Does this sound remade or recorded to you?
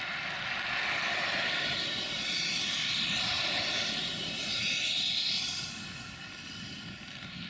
recorded